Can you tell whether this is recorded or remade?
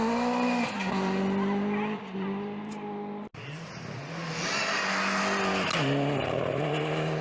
recorded